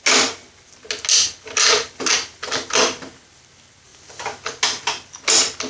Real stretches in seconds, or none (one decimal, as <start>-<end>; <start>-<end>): 0.0-5.7